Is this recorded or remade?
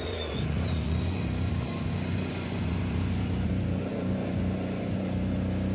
remade